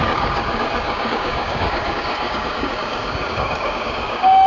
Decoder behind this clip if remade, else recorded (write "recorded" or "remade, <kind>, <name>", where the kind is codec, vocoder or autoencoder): remade, codec, DAC